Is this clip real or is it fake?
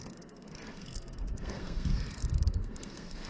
fake